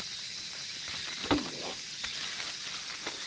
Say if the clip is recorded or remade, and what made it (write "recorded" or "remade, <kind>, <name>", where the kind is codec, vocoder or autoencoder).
recorded